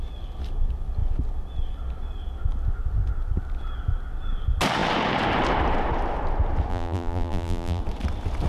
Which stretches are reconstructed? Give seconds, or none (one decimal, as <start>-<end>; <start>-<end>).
6.7-7.8